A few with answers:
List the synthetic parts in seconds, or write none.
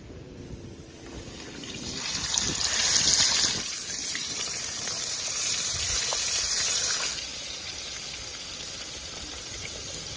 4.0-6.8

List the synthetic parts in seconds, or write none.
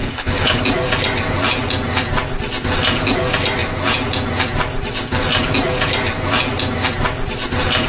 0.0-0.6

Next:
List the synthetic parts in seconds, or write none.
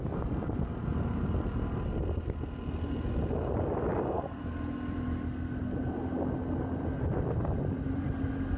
none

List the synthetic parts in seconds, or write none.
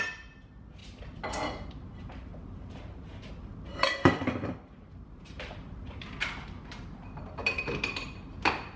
2.3-3.3; 3.7-7.9